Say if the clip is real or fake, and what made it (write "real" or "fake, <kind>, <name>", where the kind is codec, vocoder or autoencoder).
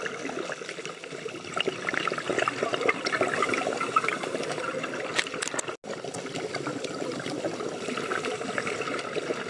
real